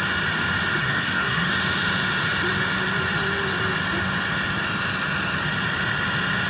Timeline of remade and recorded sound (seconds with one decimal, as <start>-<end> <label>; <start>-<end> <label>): 0.0-0.8 recorded; 0.8-1.5 remade; 1.5-6.5 recorded